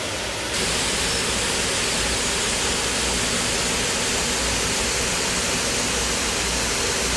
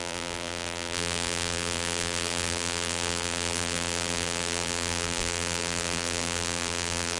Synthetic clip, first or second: second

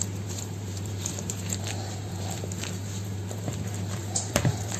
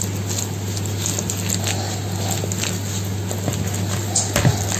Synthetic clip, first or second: first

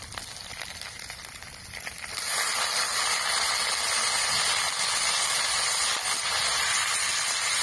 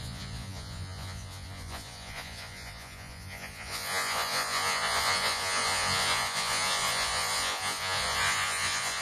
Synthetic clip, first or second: second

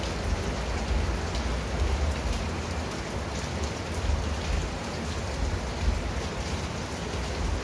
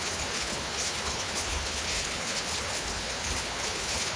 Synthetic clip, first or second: second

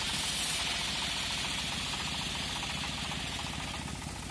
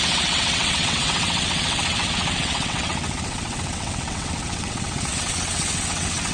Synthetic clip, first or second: second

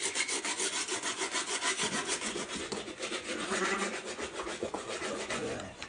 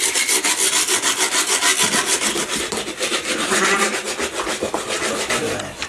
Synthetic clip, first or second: first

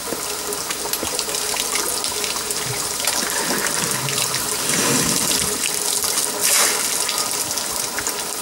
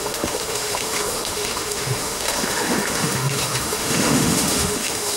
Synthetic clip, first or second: second